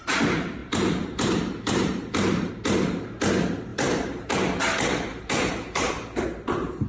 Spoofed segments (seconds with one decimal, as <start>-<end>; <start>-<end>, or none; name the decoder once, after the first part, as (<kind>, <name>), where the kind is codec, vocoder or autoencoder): 0.6-2.5 (vocoder, BigVGAN v2); 3.7-4.4; 5.1-5.9